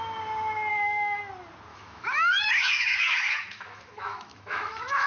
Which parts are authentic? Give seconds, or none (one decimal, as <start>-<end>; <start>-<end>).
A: 0.0-0.7; 1.2-1.7